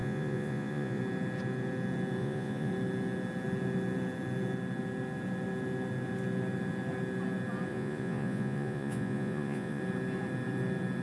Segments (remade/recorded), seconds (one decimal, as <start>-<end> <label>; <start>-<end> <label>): 0.0-1.0 remade; 1.0-2.2 recorded; 2.2-2.7 remade; 2.7-7.7 recorded; 7.7-9.8 remade; 9.8-11.0 recorded